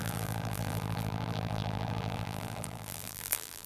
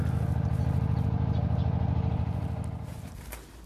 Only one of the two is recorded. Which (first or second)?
second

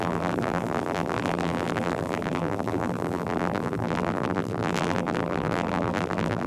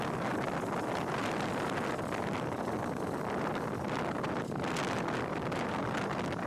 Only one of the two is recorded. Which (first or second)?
second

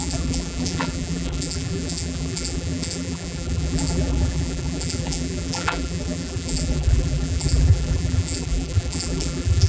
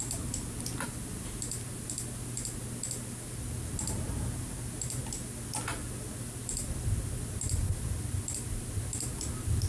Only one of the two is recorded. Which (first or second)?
second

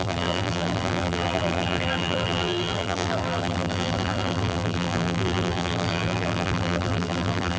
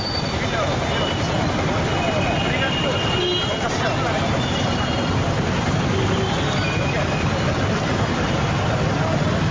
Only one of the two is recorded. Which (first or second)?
second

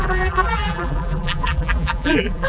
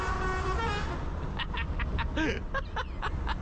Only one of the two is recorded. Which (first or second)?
second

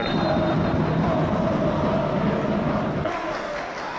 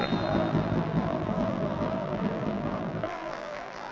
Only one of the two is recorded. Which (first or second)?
first